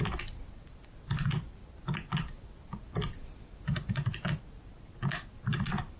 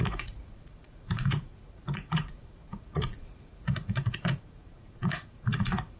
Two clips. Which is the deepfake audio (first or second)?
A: second